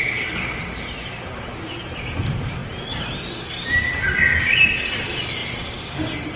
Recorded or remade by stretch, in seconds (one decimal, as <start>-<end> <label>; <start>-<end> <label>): 0.0-2.6 remade; 2.6-3.9 recorded; 3.9-4.3 remade; 4.3-4.9 recorded; 4.9-5.4 remade; 5.4-6.4 recorded

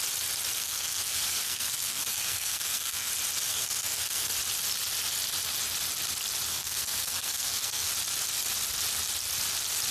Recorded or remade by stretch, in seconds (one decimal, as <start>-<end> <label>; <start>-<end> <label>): 0.0-0.5 recorded; 0.5-3.1 remade; 3.1-3.5 recorded; 3.5-4.3 remade; 4.3-6.5 recorded; 6.5-7.9 remade; 7.9-9.9 recorded

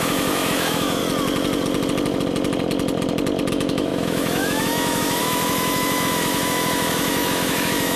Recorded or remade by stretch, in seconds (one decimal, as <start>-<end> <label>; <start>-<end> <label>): 0.0-1.0 remade; 1.0-3.5 recorded; 3.5-8.0 remade

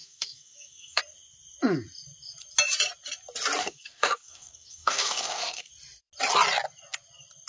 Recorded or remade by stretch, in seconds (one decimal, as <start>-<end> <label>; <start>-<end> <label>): 0.0-1.0 remade; 1.0-3.6 recorded; 3.6-5.7 remade; 5.7-7.5 recorded

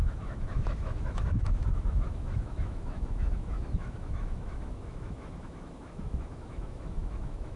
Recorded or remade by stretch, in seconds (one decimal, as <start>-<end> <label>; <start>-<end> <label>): 0.0-7.6 remade

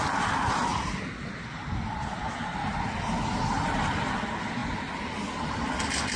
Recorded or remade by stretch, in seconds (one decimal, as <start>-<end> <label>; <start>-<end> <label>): 0.0-0.7 recorded; 0.7-3.1 remade; 3.1-6.2 recorded